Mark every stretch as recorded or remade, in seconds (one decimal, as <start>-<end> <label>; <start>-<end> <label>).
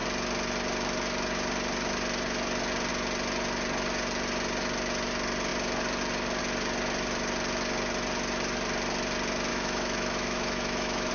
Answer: 0.0-9.5 recorded; 9.5-11.1 remade